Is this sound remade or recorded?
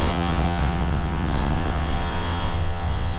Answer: remade